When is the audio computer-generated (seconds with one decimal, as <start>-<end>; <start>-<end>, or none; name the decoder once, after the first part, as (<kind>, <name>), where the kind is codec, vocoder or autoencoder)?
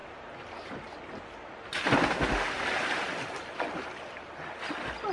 none